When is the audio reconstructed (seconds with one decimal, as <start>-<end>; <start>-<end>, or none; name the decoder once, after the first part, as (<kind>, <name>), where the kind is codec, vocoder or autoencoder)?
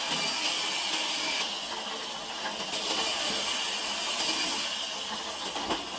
none